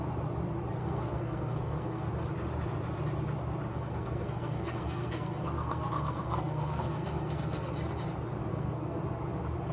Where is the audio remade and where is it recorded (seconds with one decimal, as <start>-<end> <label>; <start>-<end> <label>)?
0.0-0.8 recorded; 0.8-2.1 remade; 2.1-3.7 recorded; 3.7-7.7 remade; 7.7-8.5 recorded; 8.5-9.0 remade; 9.0-9.7 recorded